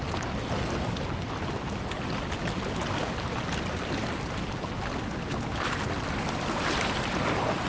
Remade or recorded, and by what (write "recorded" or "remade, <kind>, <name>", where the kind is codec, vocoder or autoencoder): recorded